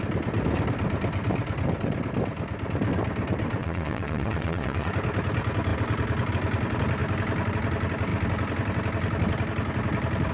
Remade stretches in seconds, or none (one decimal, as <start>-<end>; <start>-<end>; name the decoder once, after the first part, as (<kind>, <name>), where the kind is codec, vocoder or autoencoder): 3.6-4.9 (vocoder, Vocos)